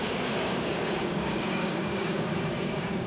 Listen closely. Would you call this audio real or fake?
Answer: fake